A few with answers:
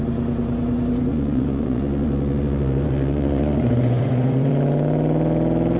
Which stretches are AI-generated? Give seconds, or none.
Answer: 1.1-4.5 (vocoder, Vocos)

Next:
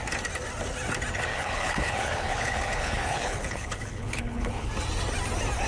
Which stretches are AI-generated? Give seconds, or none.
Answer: 1.3-4.7 (codec, HILCodec)

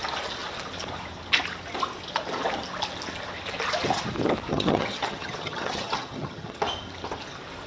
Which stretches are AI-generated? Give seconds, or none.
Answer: 4.5-6.6 (vocoder, HiFi-GAN)

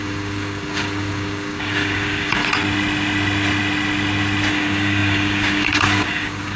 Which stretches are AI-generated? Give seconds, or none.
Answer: 0.0-2.4 (codec, DAC); 4.5-6.6

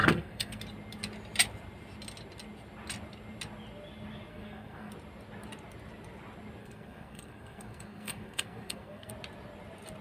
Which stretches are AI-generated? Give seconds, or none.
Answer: 0.0-0.6 (codec, SNAC); 4.3-4.9; 6.6-9.1

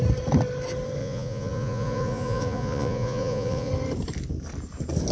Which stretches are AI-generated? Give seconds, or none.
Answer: 1.0-3.7 (vocoder, Vocos)